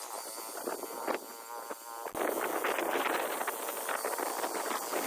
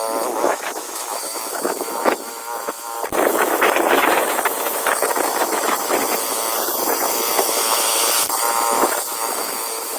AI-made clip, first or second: second